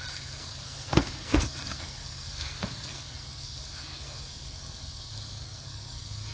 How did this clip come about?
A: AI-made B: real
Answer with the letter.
A